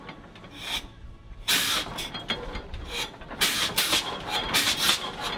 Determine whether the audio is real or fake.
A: real